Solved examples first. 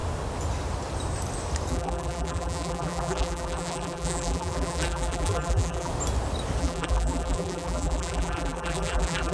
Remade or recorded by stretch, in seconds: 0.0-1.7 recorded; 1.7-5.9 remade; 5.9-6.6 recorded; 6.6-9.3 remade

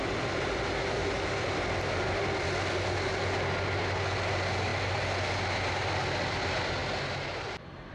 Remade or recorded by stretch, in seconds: 0.0-7.9 recorded

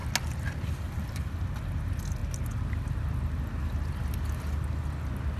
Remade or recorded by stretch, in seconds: 0.0-5.4 recorded

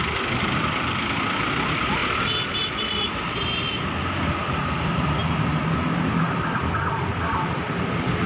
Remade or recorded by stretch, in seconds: 0.0-2.0 remade; 2.0-2.6 recorded; 2.6-5.2 remade; 5.2-6.2 recorded; 6.2-8.3 remade

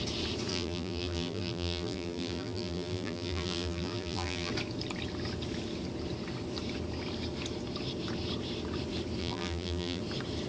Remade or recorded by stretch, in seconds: 0.0-0.5 recorded; 0.5-4.5 remade; 4.5-9.2 recorded; 9.2-10.0 remade; 10.0-10.5 recorded

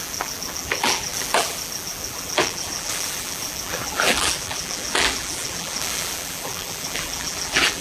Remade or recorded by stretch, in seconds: 0.0-7.8 remade